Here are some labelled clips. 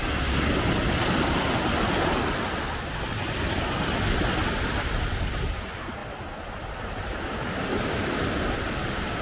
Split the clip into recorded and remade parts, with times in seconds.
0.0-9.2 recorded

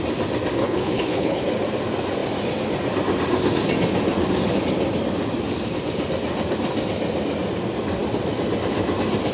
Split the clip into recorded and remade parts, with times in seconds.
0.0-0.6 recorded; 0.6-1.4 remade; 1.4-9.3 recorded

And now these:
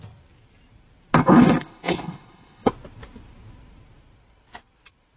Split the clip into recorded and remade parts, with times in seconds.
0.0-1.2 recorded; 1.2-2.7 remade; 2.7-5.2 recorded